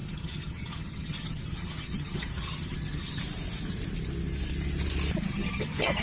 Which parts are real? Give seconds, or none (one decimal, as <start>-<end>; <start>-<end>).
3.2-5.3